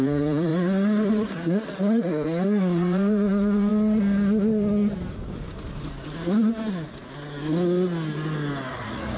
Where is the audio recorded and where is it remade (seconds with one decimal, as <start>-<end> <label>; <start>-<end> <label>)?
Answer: 0.0-0.5 remade; 0.5-1.1 recorded; 1.1-3.7 remade; 3.7-8.7 recorded; 8.7-9.2 remade

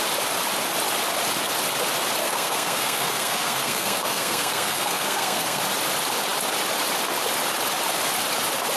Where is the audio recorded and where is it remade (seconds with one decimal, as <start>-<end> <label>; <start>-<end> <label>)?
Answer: 0.0-2.2 recorded; 2.2-5.6 remade; 5.6-8.8 recorded

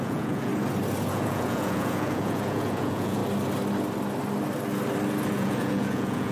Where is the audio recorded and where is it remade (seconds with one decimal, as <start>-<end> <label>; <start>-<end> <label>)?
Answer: 0.0-0.5 remade; 0.5-1.1 recorded; 1.1-3.2 remade; 3.2-5.3 recorded; 5.3-6.3 remade

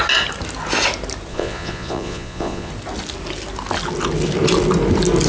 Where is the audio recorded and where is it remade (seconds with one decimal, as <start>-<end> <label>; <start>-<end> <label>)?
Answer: 0.0-1.3 recorded; 1.3-2.7 remade; 2.7-5.3 recorded

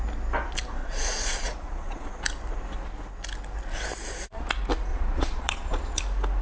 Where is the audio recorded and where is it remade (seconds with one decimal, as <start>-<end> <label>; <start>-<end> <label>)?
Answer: 0.0-0.8 recorded; 0.8-2.2 remade; 2.2-4.9 recorded; 4.9-6.0 remade; 6.0-6.4 recorded

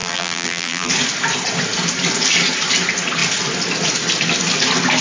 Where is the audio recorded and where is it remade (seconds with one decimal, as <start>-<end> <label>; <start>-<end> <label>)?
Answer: 0.0-0.9 remade; 0.9-5.0 recorded

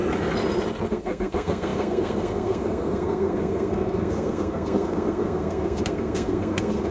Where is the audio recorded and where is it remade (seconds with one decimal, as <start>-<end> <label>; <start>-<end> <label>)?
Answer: 0.0-0.9 recorded; 0.9-6.9 remade

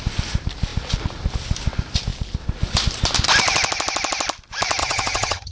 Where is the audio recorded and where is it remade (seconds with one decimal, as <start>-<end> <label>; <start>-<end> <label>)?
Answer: 0.0-4.8 recorded; 4.8-5.5 remade